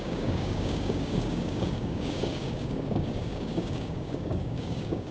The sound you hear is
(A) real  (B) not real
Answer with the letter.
B